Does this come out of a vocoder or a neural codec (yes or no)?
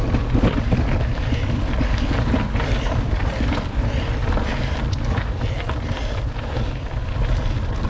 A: no